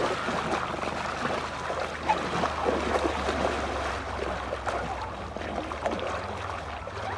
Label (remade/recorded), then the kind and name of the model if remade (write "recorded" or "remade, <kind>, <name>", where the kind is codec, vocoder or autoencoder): recorded